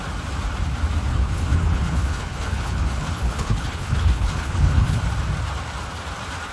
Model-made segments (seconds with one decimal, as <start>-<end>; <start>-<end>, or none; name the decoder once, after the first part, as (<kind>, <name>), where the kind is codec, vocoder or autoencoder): 1.1-5.0 (codec, HILCodec)

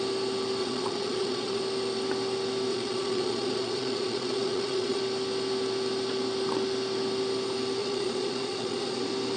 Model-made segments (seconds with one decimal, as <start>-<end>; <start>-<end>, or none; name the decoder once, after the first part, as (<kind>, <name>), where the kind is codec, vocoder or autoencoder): 0.6-1.6 (vocoder, Vocos); 2.7-5.0; 7.8-9.0

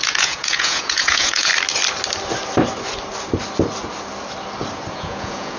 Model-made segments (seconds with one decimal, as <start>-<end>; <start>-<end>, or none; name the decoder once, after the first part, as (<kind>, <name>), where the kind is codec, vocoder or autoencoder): 0.0-1.5 (vocoder, Vocos); 4.9-5.6

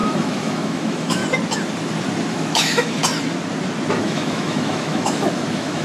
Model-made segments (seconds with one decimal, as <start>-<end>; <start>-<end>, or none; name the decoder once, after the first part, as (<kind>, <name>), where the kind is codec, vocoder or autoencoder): 0.0-1.2 (autoencoder, DAC-VAE); 2.3-3.0; 4.0-5.8

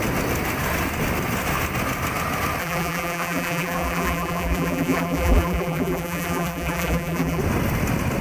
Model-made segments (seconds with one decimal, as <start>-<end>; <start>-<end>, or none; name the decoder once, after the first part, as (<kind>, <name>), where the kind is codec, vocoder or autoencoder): 2.6-7.4 (vocoder, BigVGAN v2)

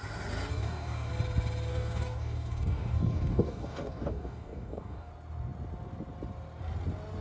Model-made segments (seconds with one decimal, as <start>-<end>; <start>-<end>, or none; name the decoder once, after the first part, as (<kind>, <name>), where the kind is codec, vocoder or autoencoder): 0.5-1.1 (codec, DAC); 1.7-5.1